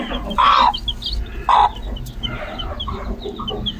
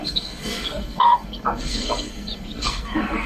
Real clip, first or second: first